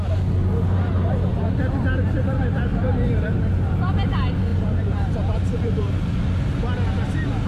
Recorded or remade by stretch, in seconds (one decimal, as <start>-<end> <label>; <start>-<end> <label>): 0.0-2.7 recorded; 2.7-3.3 remade; 3.3-4.5 recorded; 4.5-5.9 remade; 5.9-7.5 recorded